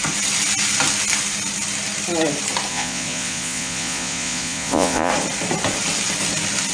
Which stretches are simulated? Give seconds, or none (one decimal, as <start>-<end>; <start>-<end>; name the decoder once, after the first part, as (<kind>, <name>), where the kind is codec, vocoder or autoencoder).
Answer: 2.7-5.1 (vocoder, Vocos)